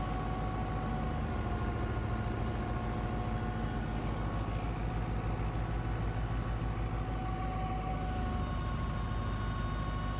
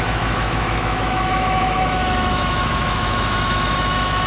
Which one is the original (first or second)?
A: first